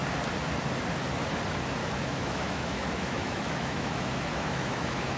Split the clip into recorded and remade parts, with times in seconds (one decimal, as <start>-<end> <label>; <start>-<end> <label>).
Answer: 0.0-1.8 recorded; 1.8-5.2 remade